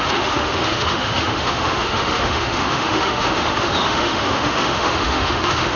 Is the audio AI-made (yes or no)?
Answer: yes